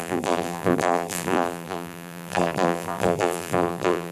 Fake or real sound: fake